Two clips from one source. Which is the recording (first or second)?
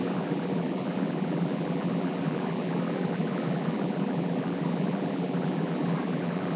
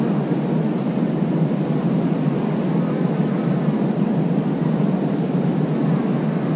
second